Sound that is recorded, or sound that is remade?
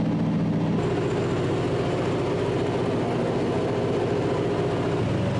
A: recorded